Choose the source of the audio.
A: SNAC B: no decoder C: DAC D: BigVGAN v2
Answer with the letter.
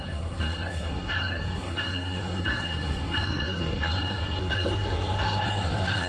A